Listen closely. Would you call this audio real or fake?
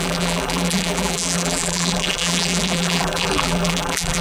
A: fake